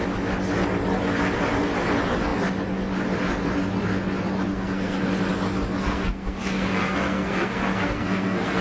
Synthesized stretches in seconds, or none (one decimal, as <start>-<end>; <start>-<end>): 4.5-5.1; 5.8-8.6